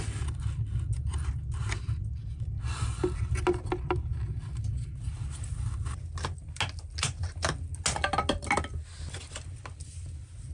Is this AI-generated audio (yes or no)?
no